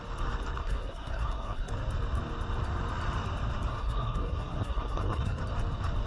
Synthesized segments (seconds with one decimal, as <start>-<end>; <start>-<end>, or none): 0.6-1.7; 3.7-5.4